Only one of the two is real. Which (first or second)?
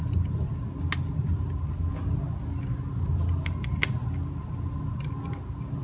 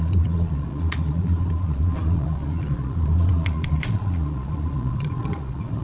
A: first